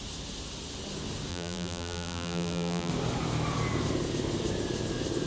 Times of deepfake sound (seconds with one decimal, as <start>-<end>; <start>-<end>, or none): 1.3-2.9